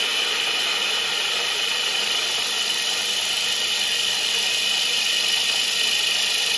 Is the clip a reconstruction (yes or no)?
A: no